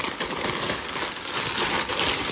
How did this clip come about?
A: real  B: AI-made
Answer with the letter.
A